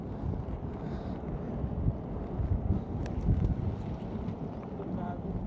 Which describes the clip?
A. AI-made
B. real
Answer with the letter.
B